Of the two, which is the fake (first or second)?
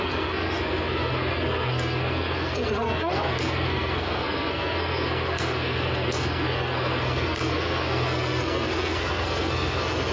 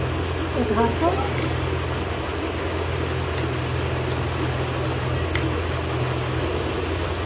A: first